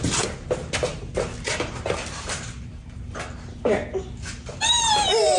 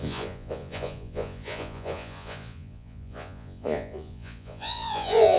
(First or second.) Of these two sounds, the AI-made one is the second